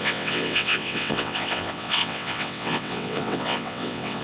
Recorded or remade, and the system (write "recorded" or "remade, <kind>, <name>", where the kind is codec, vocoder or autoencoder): remade, vocoder, WaveNeXt